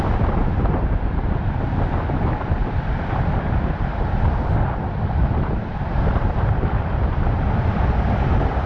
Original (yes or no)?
no